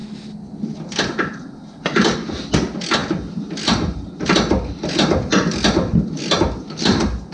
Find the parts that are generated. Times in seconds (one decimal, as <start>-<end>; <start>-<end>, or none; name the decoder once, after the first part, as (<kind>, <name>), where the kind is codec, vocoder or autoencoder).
none